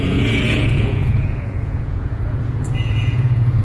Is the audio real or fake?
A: fake